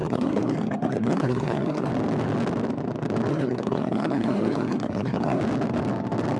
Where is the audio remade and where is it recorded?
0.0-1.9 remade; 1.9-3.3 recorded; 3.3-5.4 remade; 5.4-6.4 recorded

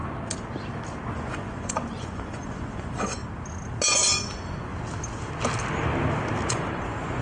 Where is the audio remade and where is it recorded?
0.0-1.1 recorded; 1.1-3.2 remade; 3.2-3.9 recorded; 3.9-4.7 remade; 4.7-6.5 recorded; 6.5-7.2 remade